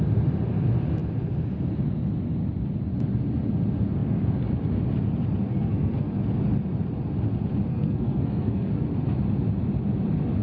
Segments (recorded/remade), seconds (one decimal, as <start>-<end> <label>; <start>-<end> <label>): 0.0-5.5 recorded; 5.5-6.2 remade; 6.2-7.7 recorded; 7.7-8.7 remade; 8.7-10.4 recorded